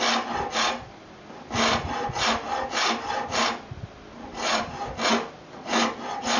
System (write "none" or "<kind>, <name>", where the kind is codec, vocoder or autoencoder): none